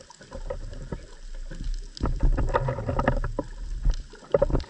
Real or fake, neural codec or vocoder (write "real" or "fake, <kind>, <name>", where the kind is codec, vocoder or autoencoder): real